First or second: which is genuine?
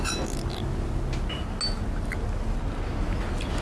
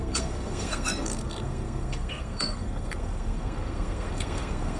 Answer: first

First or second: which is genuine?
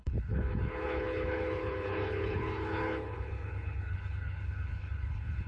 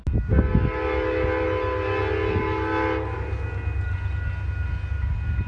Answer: second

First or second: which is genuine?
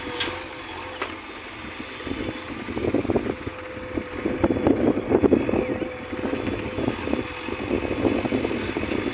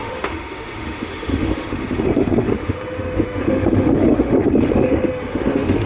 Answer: first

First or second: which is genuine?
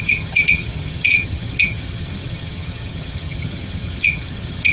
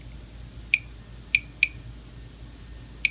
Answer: second